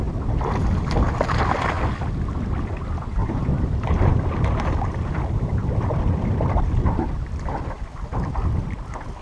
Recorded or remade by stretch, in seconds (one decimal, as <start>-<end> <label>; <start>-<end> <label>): 0.0-3.2 recorded; 3.2-4.1 remade; 4.1-9.2 recorded